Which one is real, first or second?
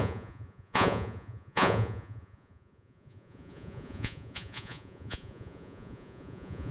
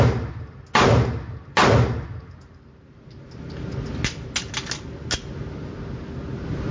second